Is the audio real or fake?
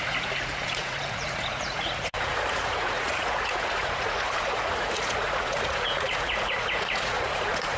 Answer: fake